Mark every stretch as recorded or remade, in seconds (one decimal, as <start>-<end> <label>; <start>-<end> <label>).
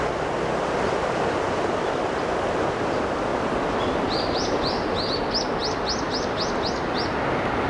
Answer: 0.0-7.7 recorded